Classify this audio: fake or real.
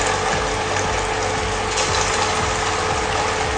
real